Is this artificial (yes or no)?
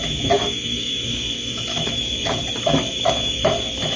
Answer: yes